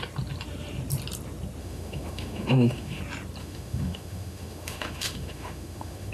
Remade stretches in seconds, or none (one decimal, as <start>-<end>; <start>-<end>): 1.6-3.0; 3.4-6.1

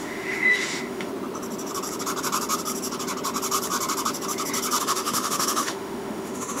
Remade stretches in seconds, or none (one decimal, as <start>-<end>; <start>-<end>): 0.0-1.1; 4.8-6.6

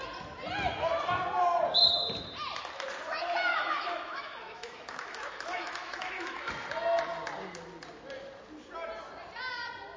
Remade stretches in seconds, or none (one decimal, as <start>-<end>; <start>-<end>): 3.5-6.5

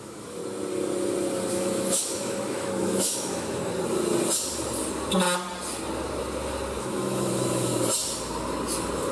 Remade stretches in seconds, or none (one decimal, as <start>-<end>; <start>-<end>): 0.0-0.4; 1.5-3.6; 6.8-7.7